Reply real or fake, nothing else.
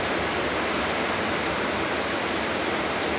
real